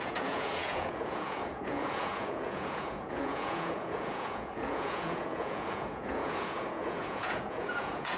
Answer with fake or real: fake